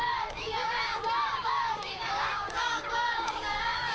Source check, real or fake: fake